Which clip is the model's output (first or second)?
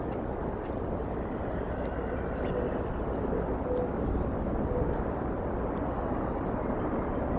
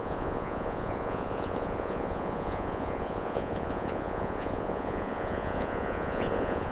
second